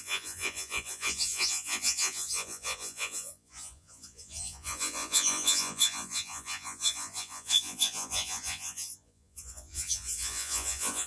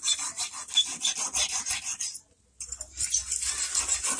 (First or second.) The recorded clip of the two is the second